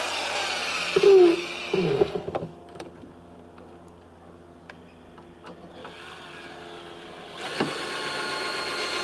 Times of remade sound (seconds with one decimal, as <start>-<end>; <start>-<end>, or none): none